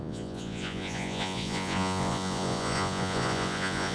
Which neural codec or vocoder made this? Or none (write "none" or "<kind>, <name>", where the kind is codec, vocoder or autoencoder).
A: vocoder, Vocos